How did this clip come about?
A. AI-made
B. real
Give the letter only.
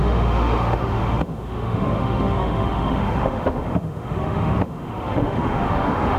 A